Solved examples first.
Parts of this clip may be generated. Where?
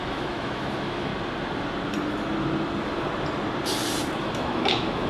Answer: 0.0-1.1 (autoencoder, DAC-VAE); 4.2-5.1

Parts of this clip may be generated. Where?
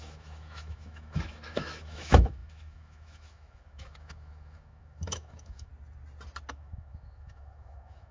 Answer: 0.0-5.7 (autoencoder, DAC-VAE); 6.5-8.1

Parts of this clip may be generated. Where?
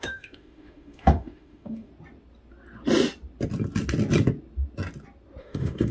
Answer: 0.0-1.9 (autoencoder, DAC-VAE); 5.4-5.9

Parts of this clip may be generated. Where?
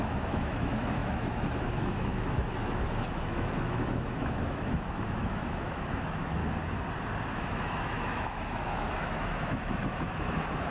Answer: 0.0-6.4 (autoencoder, DAC-VAE); 7.3-10.7